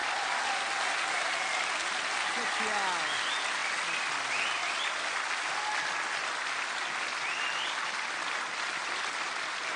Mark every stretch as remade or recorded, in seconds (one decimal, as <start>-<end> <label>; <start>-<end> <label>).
0.0-9.8 recorded